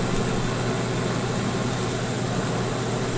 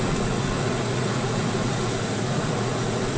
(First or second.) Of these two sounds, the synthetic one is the second